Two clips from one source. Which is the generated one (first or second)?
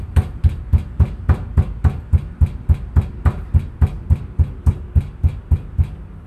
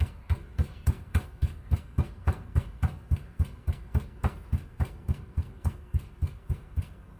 second